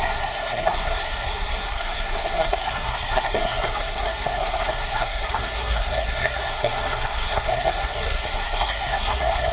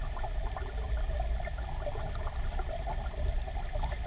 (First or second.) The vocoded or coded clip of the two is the first